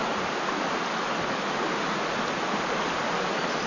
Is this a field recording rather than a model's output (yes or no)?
yes